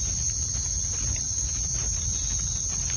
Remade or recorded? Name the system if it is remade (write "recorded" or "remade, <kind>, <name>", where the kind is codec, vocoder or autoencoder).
recorded